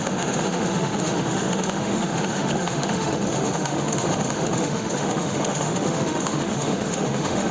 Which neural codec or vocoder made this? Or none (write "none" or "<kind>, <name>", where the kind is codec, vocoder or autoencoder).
autoencoder, DAC-VAE